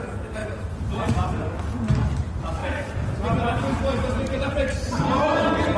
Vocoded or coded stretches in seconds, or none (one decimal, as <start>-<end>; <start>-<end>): 0.4-1.3